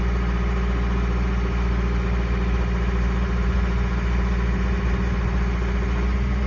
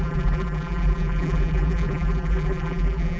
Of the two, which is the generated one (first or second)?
second